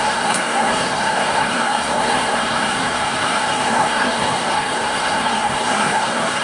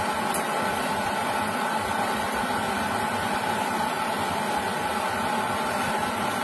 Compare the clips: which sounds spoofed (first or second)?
first